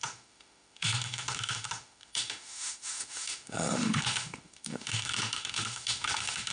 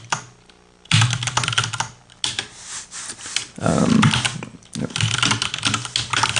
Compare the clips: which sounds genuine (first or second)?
second